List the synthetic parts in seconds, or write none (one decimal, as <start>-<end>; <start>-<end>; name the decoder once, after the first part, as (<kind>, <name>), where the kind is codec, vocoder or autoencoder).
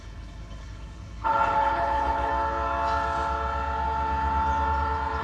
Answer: 0.0-2.3 (codec, HILCodec)